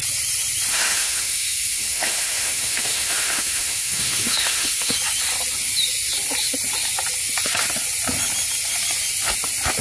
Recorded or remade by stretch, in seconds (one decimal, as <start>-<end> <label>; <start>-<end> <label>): 0.0-0.7 recorded; 0.7-4.9 remade; 4.9-9.8 recorded